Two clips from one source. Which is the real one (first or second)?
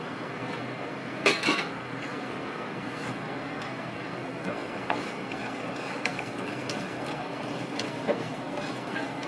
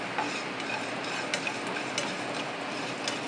second